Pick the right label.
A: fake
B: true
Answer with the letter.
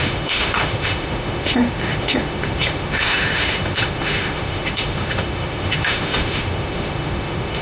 A